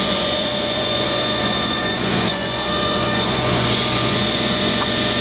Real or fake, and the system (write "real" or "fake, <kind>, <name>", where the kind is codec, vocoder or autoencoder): fake, vocoder, Vocos